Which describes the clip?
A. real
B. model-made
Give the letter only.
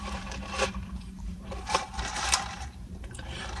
B